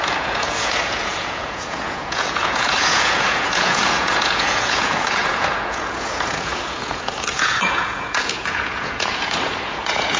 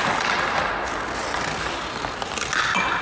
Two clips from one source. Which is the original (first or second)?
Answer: second